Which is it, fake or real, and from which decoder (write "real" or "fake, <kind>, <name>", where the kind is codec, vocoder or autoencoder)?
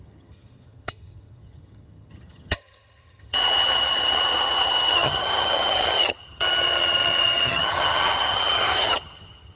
fake, vocoder, HiFi-GAN